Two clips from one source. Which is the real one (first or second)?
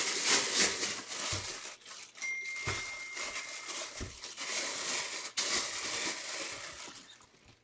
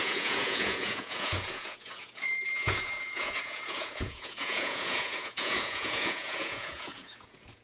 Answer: first